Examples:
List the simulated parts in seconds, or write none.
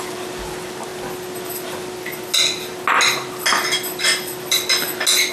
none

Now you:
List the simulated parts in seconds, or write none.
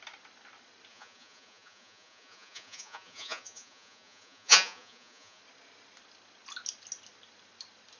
0.9-5.4 (vocoder, Vocos)